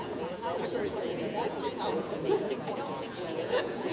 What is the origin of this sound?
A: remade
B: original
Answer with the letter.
A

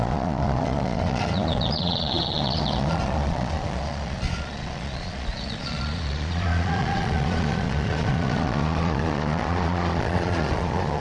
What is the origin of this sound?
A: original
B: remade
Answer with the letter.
B